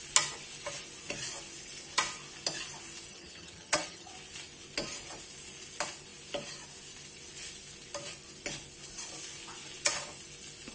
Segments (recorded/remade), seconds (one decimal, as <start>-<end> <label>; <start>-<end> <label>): 0.0-3.1 recorded; 3.1-4.1 remade; 4.1-10.7 recorded

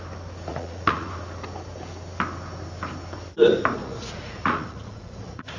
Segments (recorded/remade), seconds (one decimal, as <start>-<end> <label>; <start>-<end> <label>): 0.0-0.5 recorded; 0.5-1.1 remade; 1.1-3.8 recorded; 3.8-5.6 remade

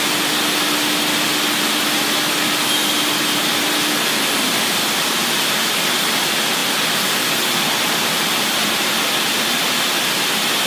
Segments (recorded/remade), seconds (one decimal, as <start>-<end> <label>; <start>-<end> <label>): 0.0-10.7 recorded

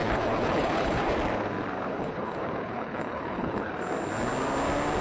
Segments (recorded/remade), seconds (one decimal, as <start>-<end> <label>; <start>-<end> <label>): 0.0-1.1 remade; 1.1-1.9 recorded; 1.9-3.7 remade; 3.7-5.0 recorded

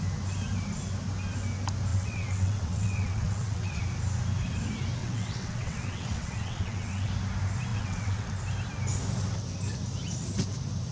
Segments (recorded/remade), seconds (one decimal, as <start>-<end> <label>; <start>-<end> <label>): 0.0-1.9 recorded; 1.9-3.8 remade; 3.8-5.0 recorded; 5.0-7.1 remade; 7.1-7.7 recorded; 7.7-8.3 remade; 8.3-10.9 recorded

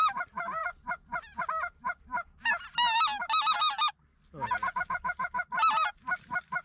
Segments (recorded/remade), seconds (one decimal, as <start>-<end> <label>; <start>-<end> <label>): 0.0-6.6 recorded

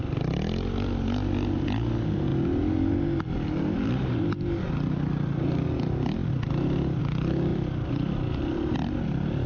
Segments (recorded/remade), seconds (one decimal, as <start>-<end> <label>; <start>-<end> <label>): 0.0-6.2 recorded; 6.2-7.0 remade; 7.0-7.5 recorded; 7.5-8.7 remade; 8.7-9.5 recorded

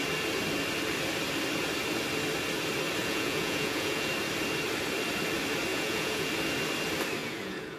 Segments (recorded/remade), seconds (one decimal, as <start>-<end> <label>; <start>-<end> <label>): 0.0-3.0 recorded; 3.0-4.1 remade; 4.1-5.7 recorded; 5.7-6.3 remade; 6.3-7.2 recorded; 7.2-7.8 remade